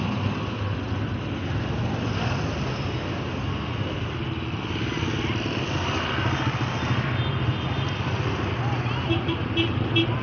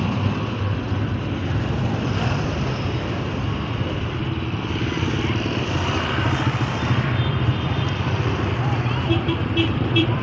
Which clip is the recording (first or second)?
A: first